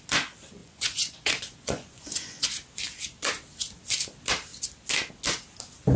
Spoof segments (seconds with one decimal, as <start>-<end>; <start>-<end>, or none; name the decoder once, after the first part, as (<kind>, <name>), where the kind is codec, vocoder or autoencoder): 0.6-2.5 (vocoder, Vocos)